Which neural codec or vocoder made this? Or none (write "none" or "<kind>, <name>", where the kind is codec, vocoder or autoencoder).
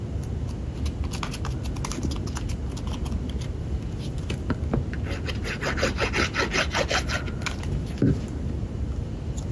none